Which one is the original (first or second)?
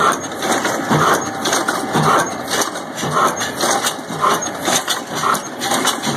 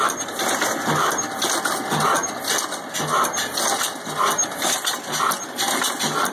second